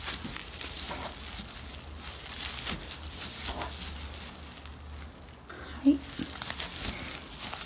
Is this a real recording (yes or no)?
yes